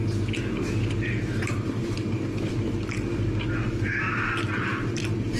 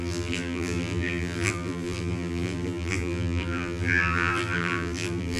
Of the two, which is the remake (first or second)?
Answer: second